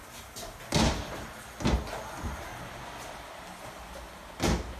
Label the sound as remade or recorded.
recorded